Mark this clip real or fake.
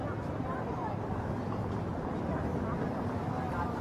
fake